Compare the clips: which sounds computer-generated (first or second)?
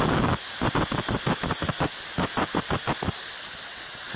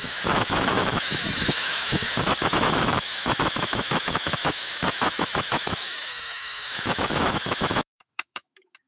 second